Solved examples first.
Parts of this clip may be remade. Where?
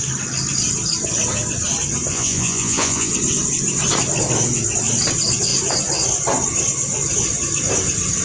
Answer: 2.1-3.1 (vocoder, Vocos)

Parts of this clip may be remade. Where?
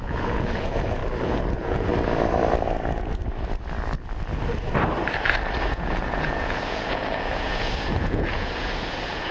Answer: 0.0-1.0 (vocoder, Vocos); 1.5-1.9; 5.7-9.3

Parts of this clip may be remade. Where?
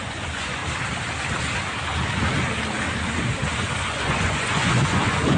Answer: 0.0-0.6 (vocoder, Vocos); 3.8-5.4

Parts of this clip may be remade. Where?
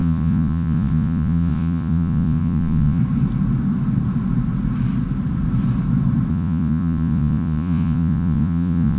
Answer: 0.0-3.0 (vocoder, Vocos); 6.3-9.0